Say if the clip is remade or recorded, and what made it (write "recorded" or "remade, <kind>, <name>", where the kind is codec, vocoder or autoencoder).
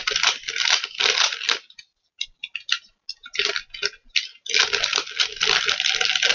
recorded